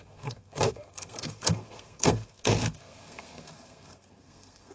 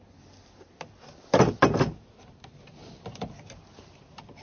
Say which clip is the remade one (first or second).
first